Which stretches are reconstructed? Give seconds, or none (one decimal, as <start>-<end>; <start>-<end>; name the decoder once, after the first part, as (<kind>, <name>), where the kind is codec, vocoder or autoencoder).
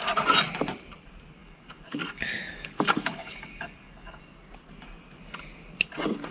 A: 1.4-4.2 (codec, DAC)